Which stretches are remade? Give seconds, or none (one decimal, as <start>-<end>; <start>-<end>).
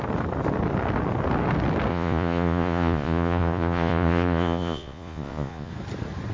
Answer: 1.9-5.7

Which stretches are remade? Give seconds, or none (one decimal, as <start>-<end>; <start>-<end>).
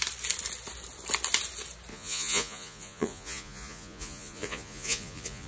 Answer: 1.9-5.5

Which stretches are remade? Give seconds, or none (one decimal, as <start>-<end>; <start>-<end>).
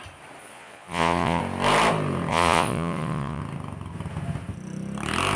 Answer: 0.4-1.4; 2.3-3.4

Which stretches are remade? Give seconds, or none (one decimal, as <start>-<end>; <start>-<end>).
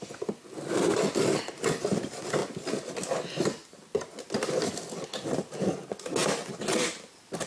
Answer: none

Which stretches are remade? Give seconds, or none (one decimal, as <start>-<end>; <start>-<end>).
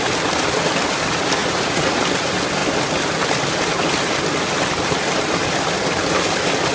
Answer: 1.4-2.0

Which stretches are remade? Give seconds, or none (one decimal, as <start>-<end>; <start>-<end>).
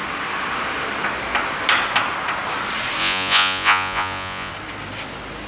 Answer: 3.0-4.5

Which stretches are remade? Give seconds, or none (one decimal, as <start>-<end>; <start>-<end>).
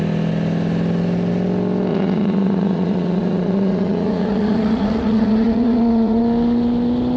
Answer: 1.9-6.2